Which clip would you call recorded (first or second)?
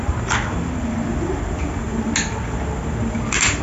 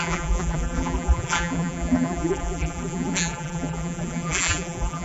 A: first